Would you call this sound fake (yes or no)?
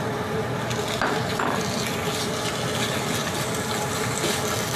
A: no